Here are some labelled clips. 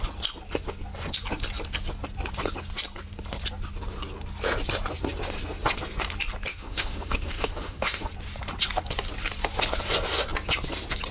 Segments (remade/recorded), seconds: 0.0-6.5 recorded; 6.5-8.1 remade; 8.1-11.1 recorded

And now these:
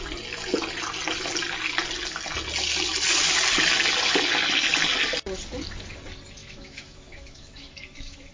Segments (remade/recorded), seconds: 0.0-6.4 recorded; 6.4-8.3 remade

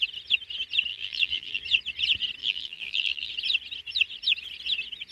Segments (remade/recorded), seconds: 0.0-0.9 recorded; 0.9-1.6 remade; 1.6-2.4 recorded; 2.4-3.3 remade; 3.3-5.1 recorded